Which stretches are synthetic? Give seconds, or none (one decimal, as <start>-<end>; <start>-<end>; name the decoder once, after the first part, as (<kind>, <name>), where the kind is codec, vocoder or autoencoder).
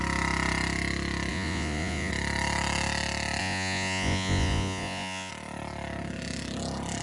1.3-2.1 (vocoder, Vocos); 3.4-5.3